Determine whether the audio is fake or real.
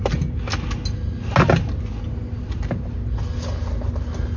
real